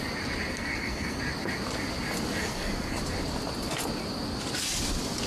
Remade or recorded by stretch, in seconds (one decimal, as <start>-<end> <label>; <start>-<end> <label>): 0.0-0.5 recorded; 0.5-1.2 remade; 1.2-2.4 recorded; 2.4-3.0 remade; 3.0-5.3 recorded